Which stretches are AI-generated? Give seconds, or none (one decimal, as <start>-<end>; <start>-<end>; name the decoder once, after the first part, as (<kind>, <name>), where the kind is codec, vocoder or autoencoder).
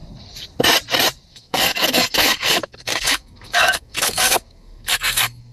1.3-5.5 (codec, SNAC)